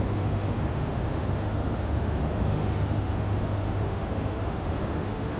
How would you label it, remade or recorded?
remade